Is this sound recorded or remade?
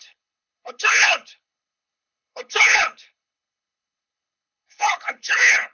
remade